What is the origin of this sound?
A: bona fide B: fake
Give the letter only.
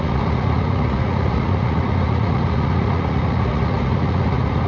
B